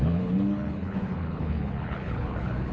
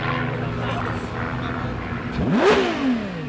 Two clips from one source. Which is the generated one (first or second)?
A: first